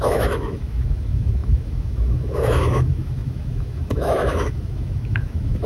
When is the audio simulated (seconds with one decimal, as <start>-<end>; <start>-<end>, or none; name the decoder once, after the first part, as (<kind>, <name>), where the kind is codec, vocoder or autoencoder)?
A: 0.0-5.7 (autoencoder, DAC-VAE)